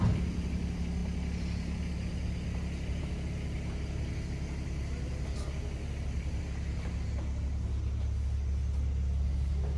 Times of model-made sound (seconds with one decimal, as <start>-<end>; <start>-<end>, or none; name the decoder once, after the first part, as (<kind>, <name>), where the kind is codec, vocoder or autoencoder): none